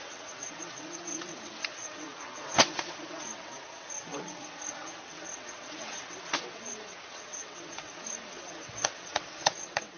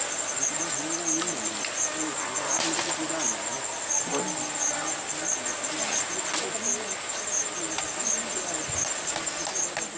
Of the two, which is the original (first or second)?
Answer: second